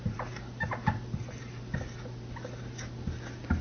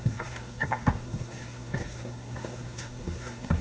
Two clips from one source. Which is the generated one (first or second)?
second